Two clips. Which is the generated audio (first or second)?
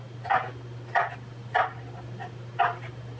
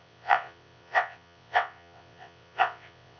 second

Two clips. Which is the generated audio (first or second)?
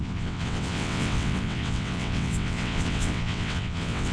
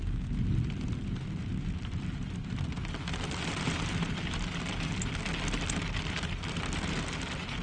first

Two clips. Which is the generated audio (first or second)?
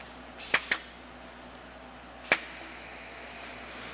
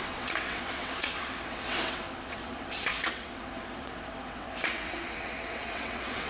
second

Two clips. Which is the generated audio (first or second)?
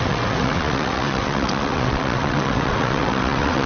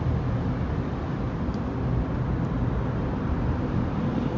first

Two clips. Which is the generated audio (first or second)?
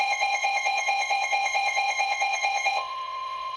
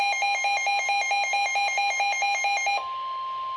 first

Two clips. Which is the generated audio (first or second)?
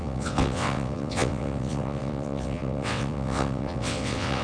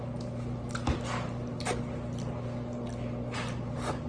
first